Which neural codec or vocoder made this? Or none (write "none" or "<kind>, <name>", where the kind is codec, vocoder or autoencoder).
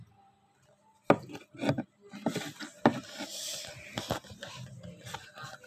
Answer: none